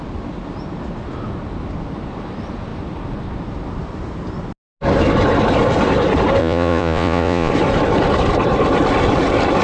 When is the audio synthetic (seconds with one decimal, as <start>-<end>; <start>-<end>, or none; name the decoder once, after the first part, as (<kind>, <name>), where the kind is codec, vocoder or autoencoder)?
6.4-7.5 (vocoder, Vocos)